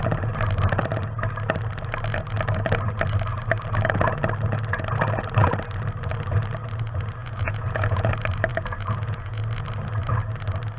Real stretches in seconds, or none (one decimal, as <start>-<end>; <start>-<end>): 0.0-7.2; 8.1-8.5; 9.4-10.8